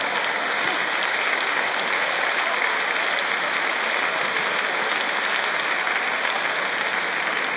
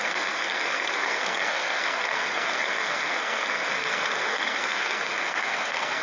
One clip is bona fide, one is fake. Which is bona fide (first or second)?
first